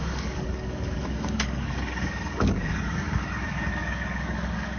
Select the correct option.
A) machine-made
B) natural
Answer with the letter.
A